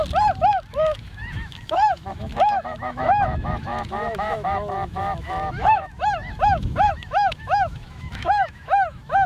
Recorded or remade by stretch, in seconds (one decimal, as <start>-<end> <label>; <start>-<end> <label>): 0.0-0.7 recorded; 0.7-9.3 remade

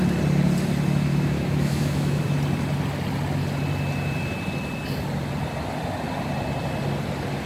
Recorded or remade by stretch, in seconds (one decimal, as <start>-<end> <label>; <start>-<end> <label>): 0.0-1.1 recorded; 1.1-2.2 remade; 2.2-7.5 recorded

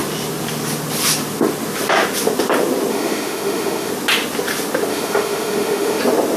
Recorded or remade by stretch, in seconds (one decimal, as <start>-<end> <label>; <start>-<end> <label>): 0.0-2.9 recorded; 2.9-3.9 remade; 3.9-4.9 recorded; 4.9-6.0 remade; 6.0-6.4 recorded